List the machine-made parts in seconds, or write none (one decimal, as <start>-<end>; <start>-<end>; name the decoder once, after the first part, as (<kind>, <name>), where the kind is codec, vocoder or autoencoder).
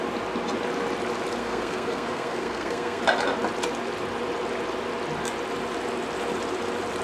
1.4-3.0 (codec, SNAC)